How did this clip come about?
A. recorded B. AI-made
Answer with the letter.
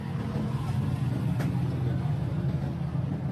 A